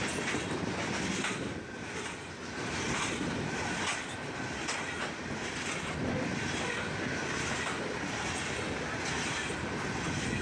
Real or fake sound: real